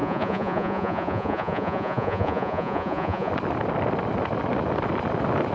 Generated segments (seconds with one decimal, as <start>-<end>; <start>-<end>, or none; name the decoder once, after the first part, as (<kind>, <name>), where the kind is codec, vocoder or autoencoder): 0.0-3.3 (vocoder, Vocos)